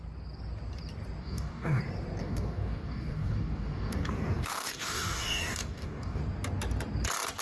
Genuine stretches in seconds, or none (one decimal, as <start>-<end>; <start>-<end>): 0.0-1.2; 1.8-2.2; 6.2-7.4

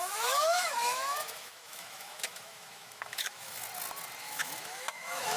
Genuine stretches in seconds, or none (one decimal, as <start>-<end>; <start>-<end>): 3.6-4.2

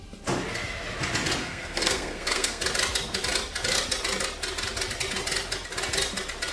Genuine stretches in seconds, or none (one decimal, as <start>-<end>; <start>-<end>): 0.0-1.4; 2.6-6.5